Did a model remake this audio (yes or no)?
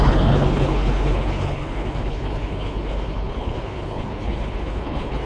yes